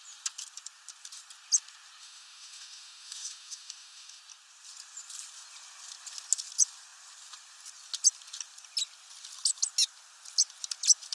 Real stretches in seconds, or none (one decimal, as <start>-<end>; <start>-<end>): 0.0-2.0; 4.2-11.1